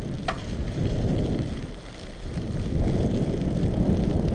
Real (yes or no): yes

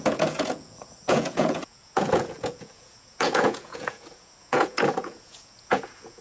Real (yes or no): no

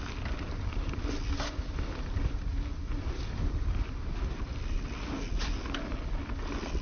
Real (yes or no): yes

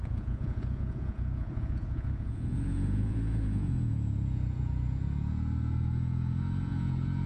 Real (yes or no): no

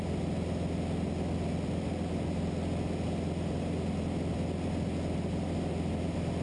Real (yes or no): yes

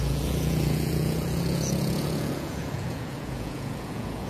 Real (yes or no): no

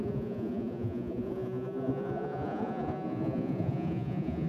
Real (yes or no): no